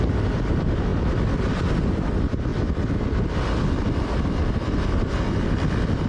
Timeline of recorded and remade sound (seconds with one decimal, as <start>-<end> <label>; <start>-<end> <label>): 0.0-6.1 recorded